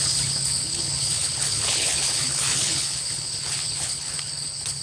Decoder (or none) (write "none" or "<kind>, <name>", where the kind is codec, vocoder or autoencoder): codec, HILCodec